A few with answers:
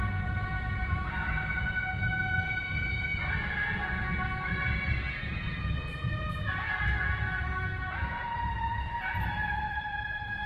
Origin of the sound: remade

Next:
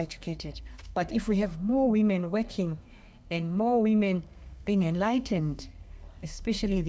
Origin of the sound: remade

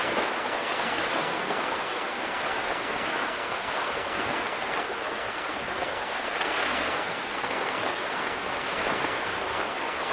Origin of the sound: remade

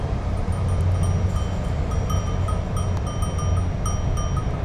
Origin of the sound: recorded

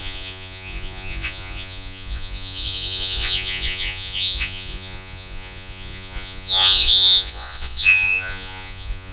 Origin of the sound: remade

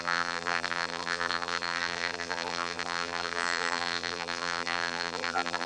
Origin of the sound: remade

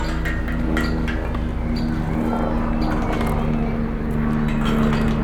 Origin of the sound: recorded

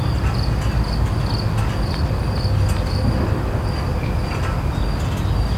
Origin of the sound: recorded